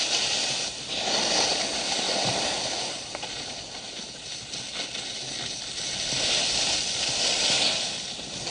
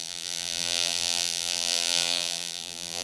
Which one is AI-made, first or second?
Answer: second